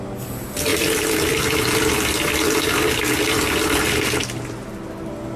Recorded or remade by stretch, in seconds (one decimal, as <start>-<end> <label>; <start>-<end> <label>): 0.0-5.4 recorded

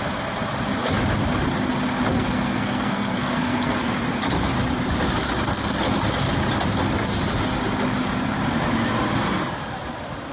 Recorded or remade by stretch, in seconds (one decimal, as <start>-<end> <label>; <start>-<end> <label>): 0.0-2.1 recorded; 2.1-4.0 remade; 4.0-10.3 recorded

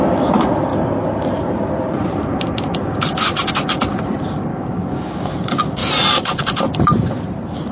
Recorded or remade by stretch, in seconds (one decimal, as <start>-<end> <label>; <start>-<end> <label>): 0.0-4.5 recorded; 4.5-5.3 remade; 5.3-7.7 recorded

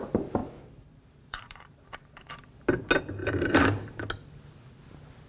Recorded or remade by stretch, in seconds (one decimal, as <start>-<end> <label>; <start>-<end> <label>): 0.0-0.4 recorded; 0.4-2.3 remade; 2.3-3.2 recorded; 3.2-4.0 remade; 4.0-5.3 recorded

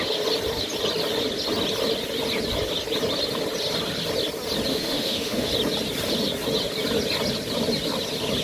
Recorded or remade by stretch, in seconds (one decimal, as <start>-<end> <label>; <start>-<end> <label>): 0.0-4.7 recorded; 4.7-5.5 remade; 5.5-8.4 recorded